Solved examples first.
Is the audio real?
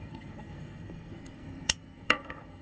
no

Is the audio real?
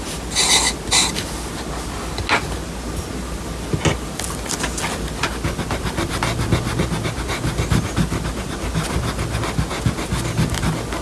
yes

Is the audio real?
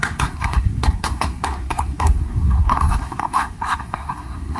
no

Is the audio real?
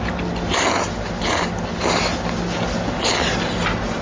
yes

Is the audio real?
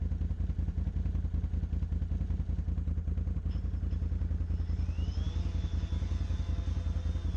yes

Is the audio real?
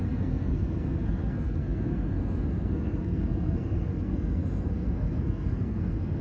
no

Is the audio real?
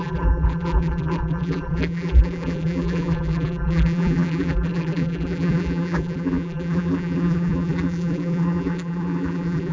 no